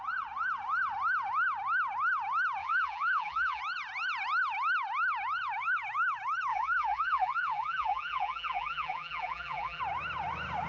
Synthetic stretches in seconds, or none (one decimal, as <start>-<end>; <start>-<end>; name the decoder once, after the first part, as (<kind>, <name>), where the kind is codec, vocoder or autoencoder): 2.6-3.6 (vocoder, BigVGAN v2); 6.5-9.8